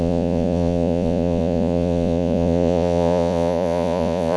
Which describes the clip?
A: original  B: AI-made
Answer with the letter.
B